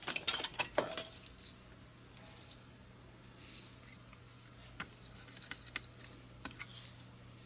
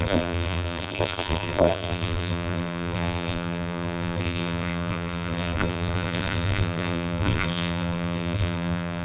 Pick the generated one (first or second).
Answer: second